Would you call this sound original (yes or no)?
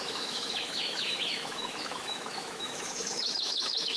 no